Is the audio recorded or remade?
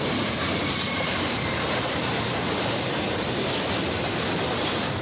remade